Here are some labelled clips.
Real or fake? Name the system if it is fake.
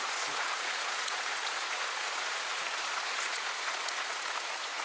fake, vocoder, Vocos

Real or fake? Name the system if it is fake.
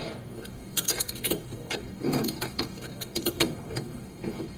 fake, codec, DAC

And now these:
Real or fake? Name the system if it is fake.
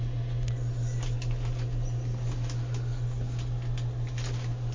real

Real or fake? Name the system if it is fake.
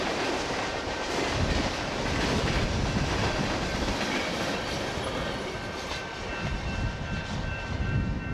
fake, vocoder, BigVGAN v2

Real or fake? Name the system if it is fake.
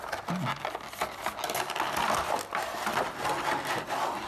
real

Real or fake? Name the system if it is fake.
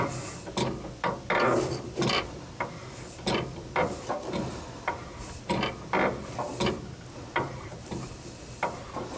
real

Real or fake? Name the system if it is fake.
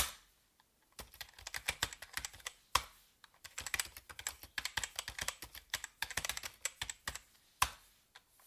real